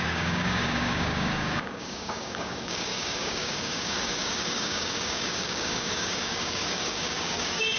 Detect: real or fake fake